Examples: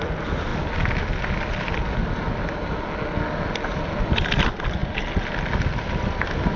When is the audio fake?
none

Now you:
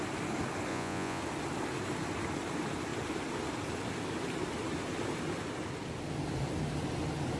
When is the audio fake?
0.7-1.2 (vocoder, Vocos)

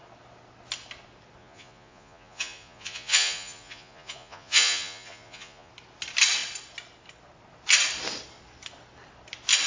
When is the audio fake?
1.4-5.7 (vocoder, Vocos)

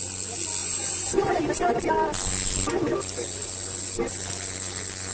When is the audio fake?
0.6-1.3 (vocoder, Vocos)

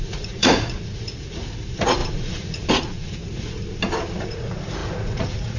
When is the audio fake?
0.0-3.6 (vocoder, Vocos); 4.2-5.6

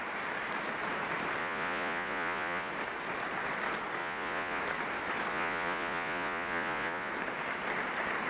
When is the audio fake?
1.4-2.7 (vocoder, Vocos); 4.0-4.6; 5.3-7.1

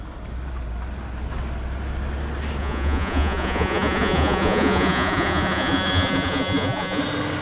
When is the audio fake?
2.6-7.0 (vocoder, Vocos)

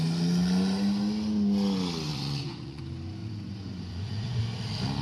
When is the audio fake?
2.1-2.8 (vocoder, Vocos); 3.2-4.4